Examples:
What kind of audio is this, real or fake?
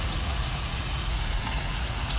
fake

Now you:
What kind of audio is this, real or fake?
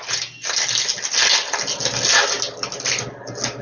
real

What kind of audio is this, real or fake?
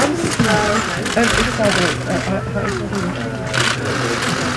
real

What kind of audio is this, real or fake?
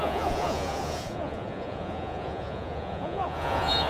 fake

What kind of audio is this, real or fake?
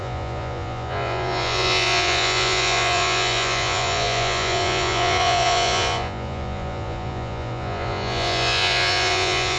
fake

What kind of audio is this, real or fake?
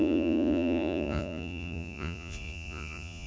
fake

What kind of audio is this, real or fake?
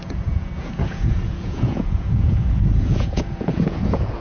fake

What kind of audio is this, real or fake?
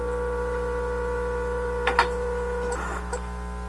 real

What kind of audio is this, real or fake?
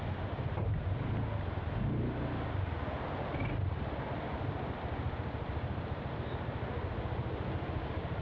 real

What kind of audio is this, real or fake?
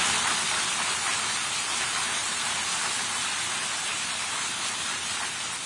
real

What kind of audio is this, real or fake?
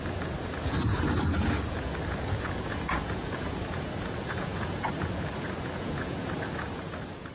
fake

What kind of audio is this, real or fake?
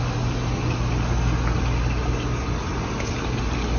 real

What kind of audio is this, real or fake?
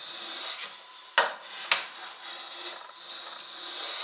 real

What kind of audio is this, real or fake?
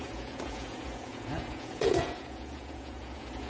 fake